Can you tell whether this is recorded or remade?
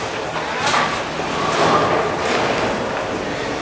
recorded